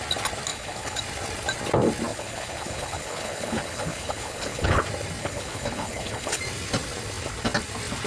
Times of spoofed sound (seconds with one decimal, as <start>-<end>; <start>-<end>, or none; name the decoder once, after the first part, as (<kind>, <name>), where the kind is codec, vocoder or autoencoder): 0.5-1.0 (codec, HILCodec); 2.1-4.8; 5.2-6.4